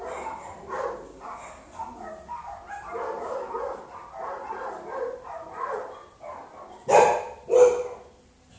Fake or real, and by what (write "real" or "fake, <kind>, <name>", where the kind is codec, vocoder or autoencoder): real